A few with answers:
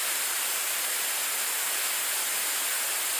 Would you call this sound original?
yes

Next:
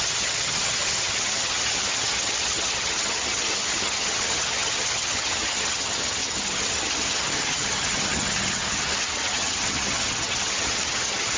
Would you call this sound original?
no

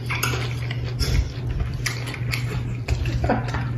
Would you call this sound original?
yes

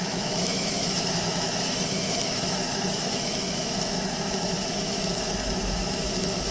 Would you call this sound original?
no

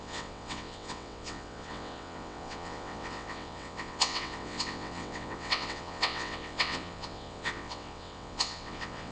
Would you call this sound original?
no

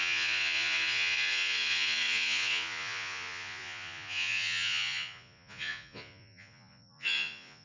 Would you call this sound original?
no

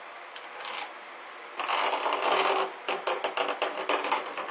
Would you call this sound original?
yes